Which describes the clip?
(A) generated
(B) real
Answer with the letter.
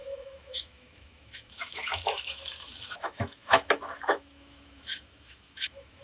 A